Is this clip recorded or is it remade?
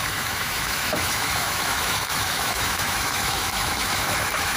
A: remade